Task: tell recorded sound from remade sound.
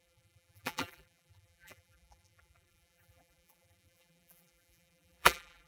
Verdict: remade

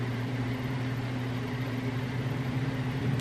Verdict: remade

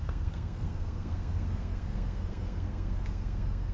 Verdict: remade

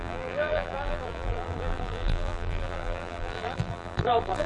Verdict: remade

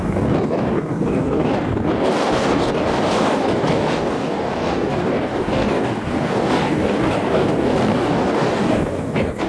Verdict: remade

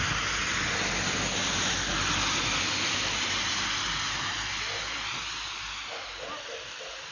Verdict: recorded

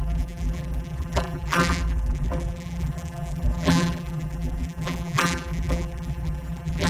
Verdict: remade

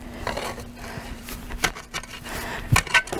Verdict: remade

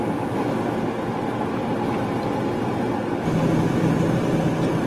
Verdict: recorded